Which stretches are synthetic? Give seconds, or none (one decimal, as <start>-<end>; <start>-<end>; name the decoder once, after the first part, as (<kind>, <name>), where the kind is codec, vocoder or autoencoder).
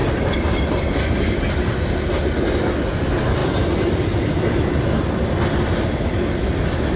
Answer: 0.0-1.5 (vocoder, BigVGAN v2); 3.4-5.3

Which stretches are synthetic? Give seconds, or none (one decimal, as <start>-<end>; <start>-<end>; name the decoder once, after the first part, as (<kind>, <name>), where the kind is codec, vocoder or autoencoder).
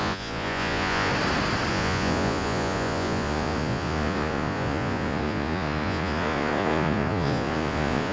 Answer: 0.0-1.1 (vocoder, Vocos); 1.7-8.1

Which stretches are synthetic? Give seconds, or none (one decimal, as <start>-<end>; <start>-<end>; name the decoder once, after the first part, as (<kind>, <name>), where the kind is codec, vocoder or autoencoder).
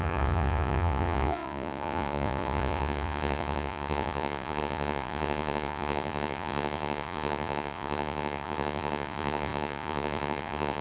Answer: 0.0-10.8 (vocoder, Vocos)